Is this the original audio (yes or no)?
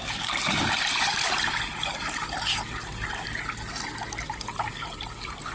yes